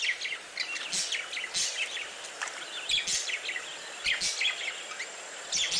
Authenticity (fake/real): real